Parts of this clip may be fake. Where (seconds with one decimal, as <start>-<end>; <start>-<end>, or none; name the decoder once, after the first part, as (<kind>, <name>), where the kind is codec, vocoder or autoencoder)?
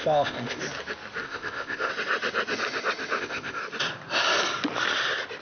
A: 0.0-0.6 (codec, ZipCodec); 1.2-1.9; 3.2-3.6